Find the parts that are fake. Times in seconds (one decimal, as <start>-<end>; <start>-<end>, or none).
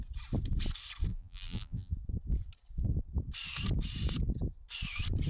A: 1.1-1.9